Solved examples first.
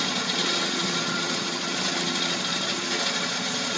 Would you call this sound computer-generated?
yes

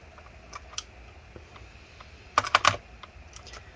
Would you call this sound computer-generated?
no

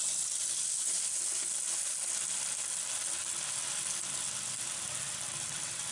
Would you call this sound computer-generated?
no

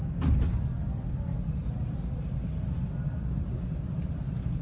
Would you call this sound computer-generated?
no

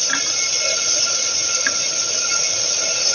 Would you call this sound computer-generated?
no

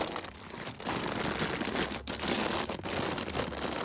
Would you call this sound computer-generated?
no